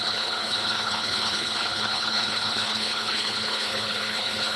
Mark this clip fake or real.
fake